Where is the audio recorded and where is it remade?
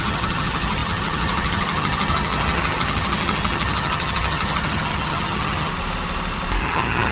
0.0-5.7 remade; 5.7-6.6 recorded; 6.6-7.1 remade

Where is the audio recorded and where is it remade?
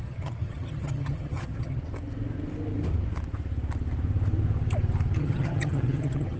0.0-1.8 remade; 1.8-5.2 recorded; 5.2-6.4 remade